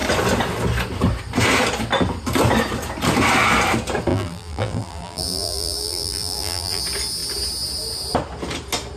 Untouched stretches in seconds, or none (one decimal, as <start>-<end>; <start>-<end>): 0.0-4.1; 6.8-9.0